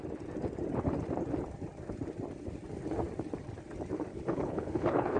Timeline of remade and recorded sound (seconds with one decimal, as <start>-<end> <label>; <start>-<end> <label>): 0.0-4.1 recorded; 4.1-5.2 remade